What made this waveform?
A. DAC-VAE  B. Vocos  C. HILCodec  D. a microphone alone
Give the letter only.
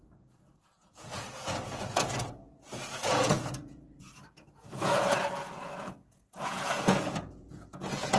B